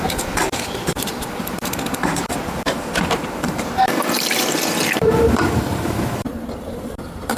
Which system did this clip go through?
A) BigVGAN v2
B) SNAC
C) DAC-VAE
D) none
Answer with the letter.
A